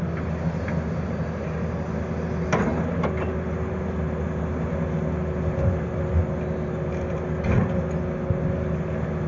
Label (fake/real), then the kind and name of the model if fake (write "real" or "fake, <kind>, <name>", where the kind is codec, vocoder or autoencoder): real